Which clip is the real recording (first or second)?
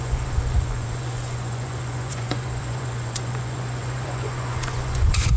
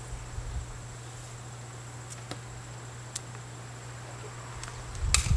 second